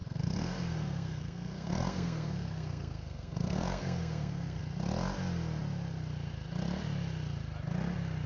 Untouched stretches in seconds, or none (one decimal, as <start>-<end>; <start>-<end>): 4.6-8.3